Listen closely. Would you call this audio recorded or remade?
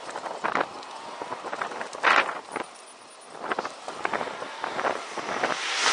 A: recorded